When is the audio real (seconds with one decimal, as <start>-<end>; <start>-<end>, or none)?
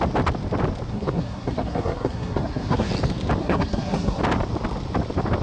0.0-0.9; 2.9-3.4; 4.2-5.4